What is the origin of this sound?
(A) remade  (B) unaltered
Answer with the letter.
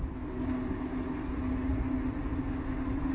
B